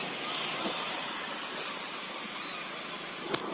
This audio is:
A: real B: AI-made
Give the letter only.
A